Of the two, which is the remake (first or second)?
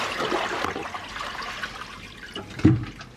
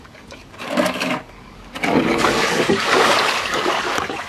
second